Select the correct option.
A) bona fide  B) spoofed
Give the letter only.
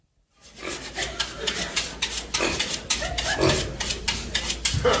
A